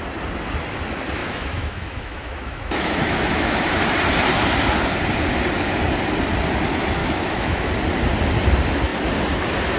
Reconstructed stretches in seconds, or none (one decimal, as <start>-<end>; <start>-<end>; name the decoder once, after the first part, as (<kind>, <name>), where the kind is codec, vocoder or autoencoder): 1.2-3.8 (autoencoder, DAC-VAE); 7.0-7.7